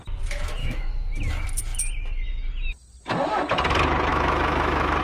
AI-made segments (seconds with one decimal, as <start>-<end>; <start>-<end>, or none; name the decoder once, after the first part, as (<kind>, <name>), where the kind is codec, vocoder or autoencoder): 0.6-1.1 (autoencoder, DAC-VAE); 4.1-5.0